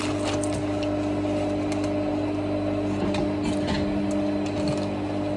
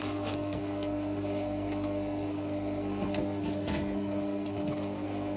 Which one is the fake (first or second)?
second